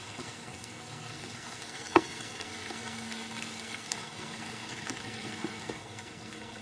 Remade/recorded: remade